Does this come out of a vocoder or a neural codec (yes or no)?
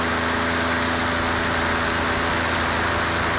no